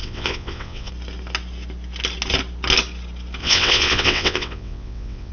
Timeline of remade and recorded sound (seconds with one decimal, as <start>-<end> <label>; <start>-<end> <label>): 0.0-0.9 remade; 0.9-3.4 recorded; 3.4-5.3 remade